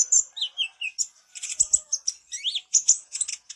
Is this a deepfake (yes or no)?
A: no